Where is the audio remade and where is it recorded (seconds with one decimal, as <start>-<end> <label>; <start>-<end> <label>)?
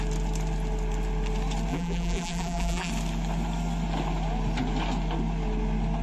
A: 0.0-1.7 recorded; 1.7-2.9 remade; 2.9-6.0 recorded